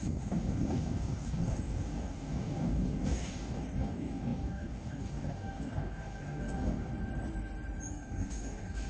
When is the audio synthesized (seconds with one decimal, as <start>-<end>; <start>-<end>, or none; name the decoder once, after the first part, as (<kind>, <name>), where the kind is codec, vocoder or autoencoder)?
0.0-6.9 (codec, DAC); 7.9-8.9

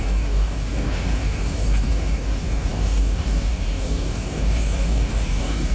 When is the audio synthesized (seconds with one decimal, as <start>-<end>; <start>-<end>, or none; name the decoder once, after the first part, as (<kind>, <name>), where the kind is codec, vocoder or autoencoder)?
0.0-5.7 (codec, DAC)